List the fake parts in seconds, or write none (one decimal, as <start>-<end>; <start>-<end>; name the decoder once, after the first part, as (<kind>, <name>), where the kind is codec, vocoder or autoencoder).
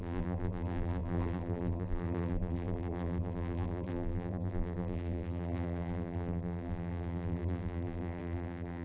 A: 0.0-8.8 (vocoder, BigVGAN v2)